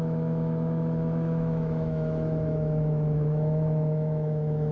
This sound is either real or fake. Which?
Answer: fake